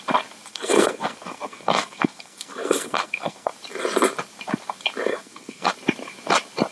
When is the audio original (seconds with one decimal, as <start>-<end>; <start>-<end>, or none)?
0.0-0.5; 3.5-5.1; 5.7-6.7